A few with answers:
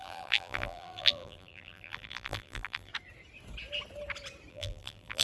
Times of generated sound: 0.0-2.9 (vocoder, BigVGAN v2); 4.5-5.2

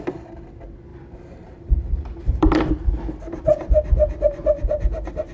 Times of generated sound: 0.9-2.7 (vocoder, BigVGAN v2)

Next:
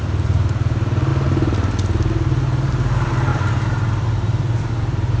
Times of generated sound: 0.0-1.1 (vocoder, BigVGAN v2); 2.8-5.2

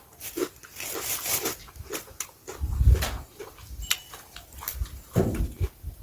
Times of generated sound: none

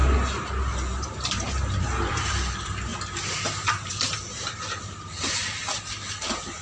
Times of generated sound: 1.8-2.9 (vocoder, BigVGAN v2); 3.9-6.6

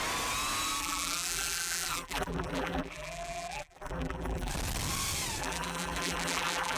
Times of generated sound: 0.8-4.5 (vocoder, BigVGAN v2); 5.4-6.8

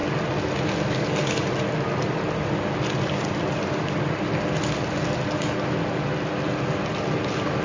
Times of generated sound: none